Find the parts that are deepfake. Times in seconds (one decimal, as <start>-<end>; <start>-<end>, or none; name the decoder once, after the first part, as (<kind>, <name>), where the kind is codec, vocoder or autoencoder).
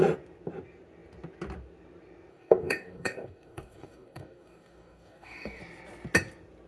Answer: 2.3-5.6 (codec, DAC)